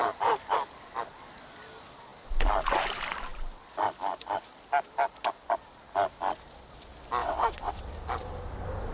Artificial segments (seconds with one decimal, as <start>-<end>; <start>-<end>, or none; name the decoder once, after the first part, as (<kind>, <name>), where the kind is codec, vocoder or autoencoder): 7.2-7.9 (vocoder, WaveNeXt)